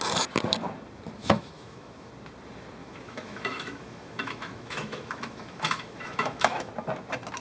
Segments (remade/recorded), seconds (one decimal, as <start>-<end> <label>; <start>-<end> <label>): 0.0-1.2 recorded; 1.2-2.1 remade; 2.1-2.8 recorded; 2.8-6.7 remade; 6.7-7.4 recorded

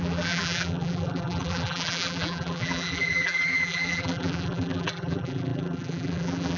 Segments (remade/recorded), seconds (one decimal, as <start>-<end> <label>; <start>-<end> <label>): 0.0-6.6 remade

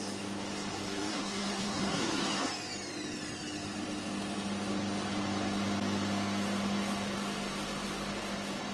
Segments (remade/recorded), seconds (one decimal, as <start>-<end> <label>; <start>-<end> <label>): 0.0-0.7 recorded; 0.7-2.5 remade; 2.5-8.7 recorded

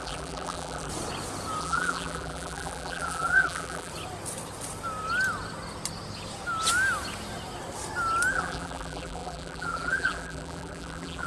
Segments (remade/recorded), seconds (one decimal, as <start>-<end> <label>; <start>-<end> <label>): 0.0-0.9 remade; 0.9-1.6 recorded; 1.6-3.9 remade; 3.9-8.3 recorded; 8.3-11.3 remade

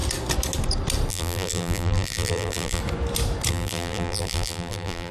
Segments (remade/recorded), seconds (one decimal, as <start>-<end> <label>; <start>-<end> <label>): 0.0-1.1 recorded; 1.1-2.8 remade; 2.8-3.5 recorded; 3.5-5.1 remade

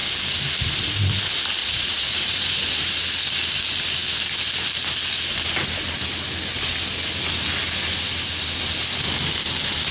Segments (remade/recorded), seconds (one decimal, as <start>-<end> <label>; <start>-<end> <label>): 0.0-1.6 recorded; 1.6-2.9 remade; 2.9-9.9 recorded

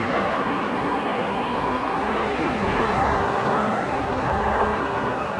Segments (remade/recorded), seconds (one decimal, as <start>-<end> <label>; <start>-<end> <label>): 0.0-5.4 remade